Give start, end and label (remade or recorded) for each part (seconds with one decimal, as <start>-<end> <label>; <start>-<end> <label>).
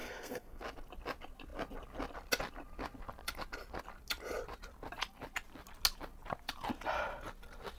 0.0-0.6 remade; 0.6-7.8 recorded